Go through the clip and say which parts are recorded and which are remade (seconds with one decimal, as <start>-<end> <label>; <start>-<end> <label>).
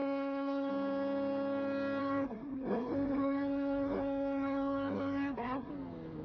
0.0-0.7 remade; 0.7-2.0 recorded; 2.0-5.7 remade; 5.7-6.2 recorded